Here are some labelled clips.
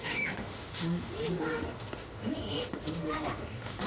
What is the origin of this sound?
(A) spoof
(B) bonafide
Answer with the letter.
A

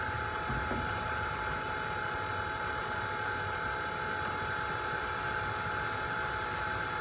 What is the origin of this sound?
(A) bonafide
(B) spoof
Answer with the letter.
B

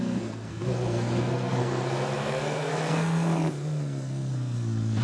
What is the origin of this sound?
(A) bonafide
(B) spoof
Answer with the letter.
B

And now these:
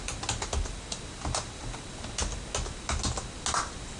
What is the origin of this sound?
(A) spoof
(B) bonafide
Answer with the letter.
B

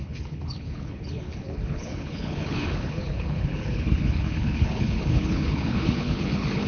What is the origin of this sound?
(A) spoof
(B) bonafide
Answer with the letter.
A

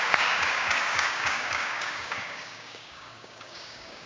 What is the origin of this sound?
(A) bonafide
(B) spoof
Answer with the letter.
B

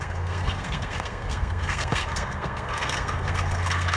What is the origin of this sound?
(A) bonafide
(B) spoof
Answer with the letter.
B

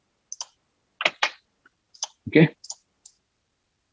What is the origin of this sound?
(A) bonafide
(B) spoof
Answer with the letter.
A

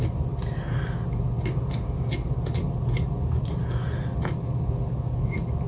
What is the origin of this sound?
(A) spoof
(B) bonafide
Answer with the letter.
B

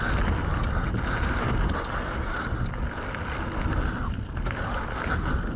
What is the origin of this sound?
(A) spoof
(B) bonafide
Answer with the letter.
B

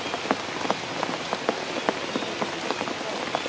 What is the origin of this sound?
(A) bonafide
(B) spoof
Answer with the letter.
A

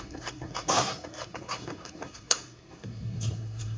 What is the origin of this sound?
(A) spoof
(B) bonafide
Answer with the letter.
A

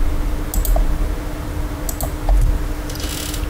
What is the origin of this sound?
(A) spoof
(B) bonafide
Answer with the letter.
B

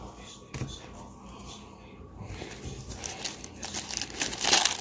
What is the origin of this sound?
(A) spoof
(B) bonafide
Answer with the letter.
B